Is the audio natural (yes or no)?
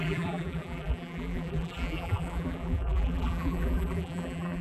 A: no